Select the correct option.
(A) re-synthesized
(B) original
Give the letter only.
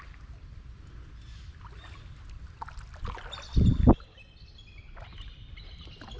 B